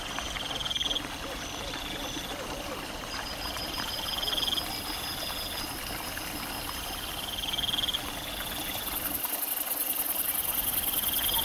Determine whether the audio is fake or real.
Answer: real